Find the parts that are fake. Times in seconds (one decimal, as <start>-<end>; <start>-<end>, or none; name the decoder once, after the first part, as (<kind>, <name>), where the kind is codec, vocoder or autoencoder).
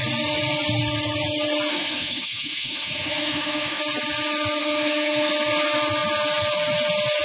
1.7-3.8 (autoencoder, DAC-VAE); 4.6-5.3